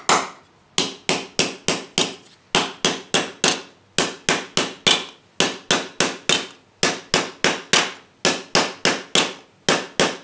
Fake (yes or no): no